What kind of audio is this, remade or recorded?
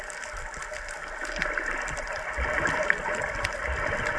recorded